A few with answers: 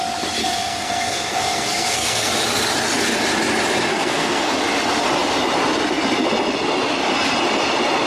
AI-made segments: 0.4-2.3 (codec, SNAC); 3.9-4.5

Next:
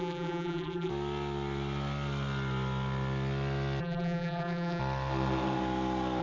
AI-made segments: 0.0-0.9 (vocoder, BigVGAN v2); 3.8-4.8